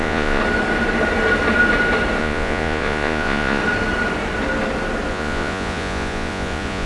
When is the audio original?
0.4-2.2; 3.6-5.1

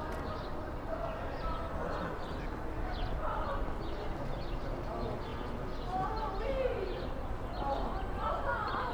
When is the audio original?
0.0-8.9

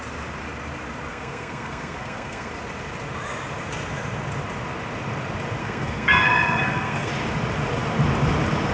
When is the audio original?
0.0-1.1; 2.5-5.6; 7.1-8.7

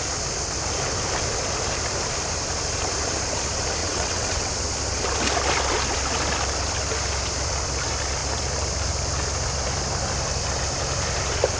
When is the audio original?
0.0-3.8; 4.5-11.6